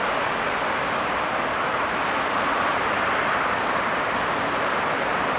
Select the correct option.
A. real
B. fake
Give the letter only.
A